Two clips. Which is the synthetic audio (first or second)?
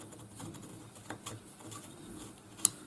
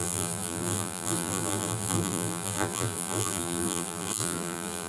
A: second